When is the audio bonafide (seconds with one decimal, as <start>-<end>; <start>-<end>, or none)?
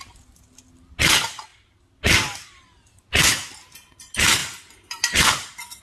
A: 0.0-5.8